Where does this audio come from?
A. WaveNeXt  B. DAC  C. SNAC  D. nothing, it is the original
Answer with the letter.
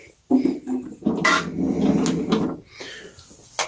D